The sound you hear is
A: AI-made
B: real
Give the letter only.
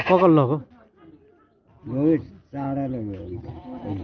B